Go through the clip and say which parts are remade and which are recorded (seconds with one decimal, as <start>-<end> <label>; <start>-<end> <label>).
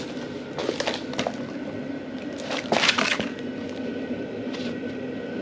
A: 0.0-5.4 recorded